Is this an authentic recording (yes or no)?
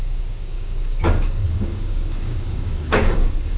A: no